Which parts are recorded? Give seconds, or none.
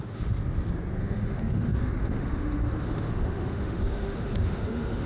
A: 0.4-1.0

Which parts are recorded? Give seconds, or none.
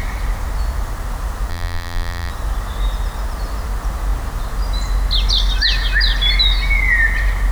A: 0.0-1.5; 2.3-7.5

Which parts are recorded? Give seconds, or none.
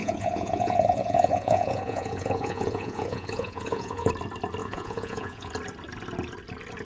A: 4.1-4.6; 5.5-6.8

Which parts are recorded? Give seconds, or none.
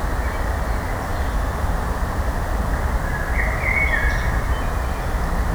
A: 0.0-5.5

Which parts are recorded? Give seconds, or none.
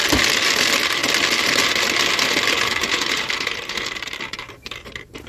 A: 0.0-2.8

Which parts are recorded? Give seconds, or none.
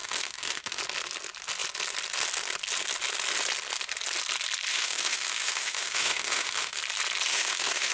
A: 0.8-4.7; 6.8-7.3